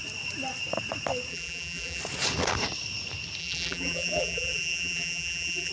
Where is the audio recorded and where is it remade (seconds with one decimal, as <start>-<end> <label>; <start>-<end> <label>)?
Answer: 0.0-1.3 recorded; 1.3-2.0 remade; 2.0-3.4 recorded; 3.4-5.7 remade